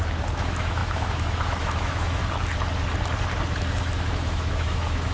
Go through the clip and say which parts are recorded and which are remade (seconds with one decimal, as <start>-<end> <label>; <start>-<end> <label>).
0.0-2.2 remade; 2.2-3.6 recorded; 3.6-5.1 remade